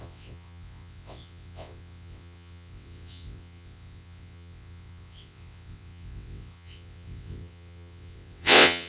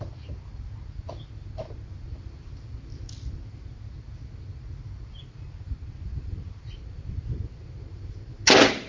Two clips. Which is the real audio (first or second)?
second